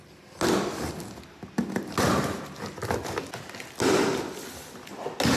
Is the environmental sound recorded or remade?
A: recorded